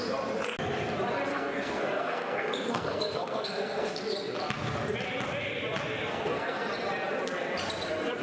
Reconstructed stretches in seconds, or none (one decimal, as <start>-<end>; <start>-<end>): 1.3-3.9; 6.1-6.7